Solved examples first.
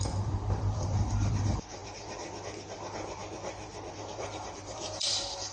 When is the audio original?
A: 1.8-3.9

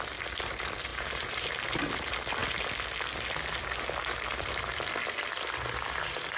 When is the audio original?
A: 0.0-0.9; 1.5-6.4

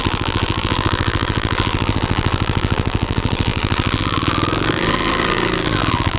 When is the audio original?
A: none